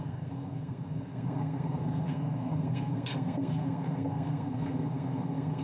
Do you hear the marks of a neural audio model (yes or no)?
yes